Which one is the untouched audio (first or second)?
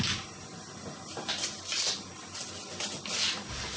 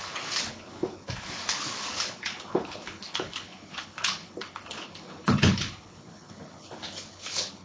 first